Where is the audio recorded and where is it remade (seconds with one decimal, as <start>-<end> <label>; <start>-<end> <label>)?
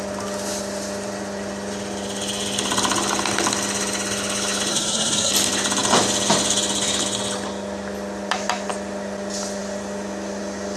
0.0-4.7 recorded; 4.7-5.3 remade; 5.3-10.8 recorded